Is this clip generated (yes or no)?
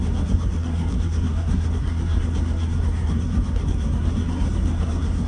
yes